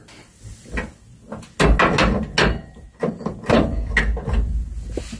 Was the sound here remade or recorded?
recorded